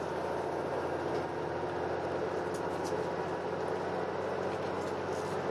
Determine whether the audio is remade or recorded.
recorded